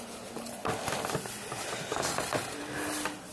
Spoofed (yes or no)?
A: no